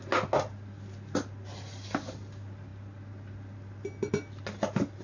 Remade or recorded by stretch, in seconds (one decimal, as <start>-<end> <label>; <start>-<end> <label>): 0.0-5.0 recorded